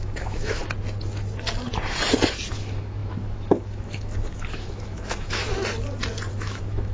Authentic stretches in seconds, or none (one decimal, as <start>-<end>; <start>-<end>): 0.6-2.5; 5.5-6.3